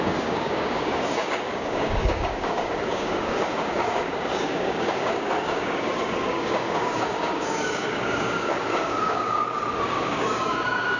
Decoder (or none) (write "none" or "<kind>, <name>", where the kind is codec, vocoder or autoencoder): codec, DAC